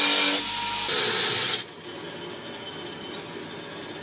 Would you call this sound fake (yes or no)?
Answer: no